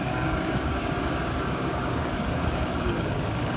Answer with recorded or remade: remade